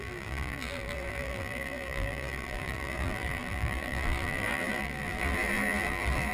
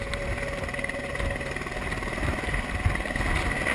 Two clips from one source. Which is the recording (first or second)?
second